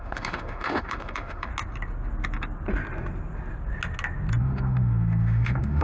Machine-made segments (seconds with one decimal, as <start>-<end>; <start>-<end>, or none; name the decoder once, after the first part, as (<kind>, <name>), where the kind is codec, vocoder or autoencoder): 0.0-1.5 (autoencoder, DAC-VAE); 4.4-5.8